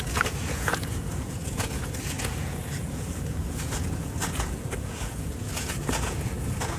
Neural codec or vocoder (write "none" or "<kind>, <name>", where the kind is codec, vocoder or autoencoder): vocoder, Vocos